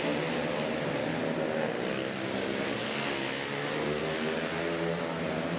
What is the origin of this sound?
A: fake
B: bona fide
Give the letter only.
B